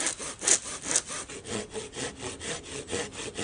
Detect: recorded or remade recorded